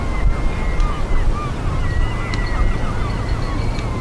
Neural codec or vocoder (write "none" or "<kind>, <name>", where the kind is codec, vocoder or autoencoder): none